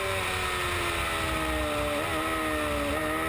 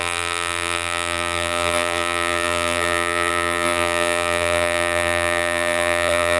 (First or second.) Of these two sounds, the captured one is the first